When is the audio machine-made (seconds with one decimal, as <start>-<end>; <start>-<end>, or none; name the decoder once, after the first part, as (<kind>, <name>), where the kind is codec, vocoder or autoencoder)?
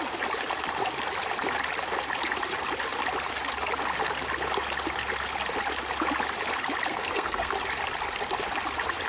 6.9-7.5 (codec, SNAC)